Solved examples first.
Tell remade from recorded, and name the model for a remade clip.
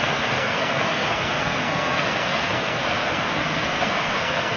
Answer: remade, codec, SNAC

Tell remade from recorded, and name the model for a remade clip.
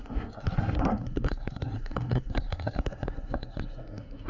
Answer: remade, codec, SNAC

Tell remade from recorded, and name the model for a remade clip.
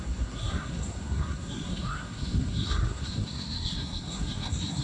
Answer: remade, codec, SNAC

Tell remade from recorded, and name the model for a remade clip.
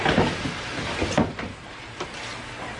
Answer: recorded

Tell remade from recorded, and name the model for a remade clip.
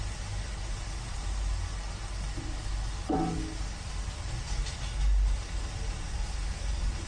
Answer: recorded